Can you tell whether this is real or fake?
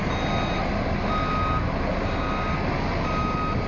real